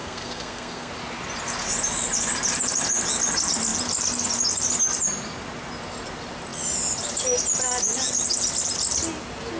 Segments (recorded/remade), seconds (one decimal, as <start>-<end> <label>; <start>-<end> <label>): 0.0-0.9 remade; 0.9-9.6 recorded